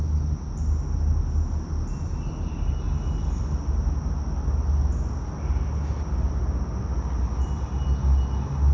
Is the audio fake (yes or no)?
no